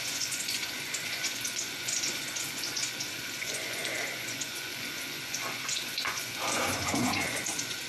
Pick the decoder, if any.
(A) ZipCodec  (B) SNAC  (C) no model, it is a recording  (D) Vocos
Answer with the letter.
D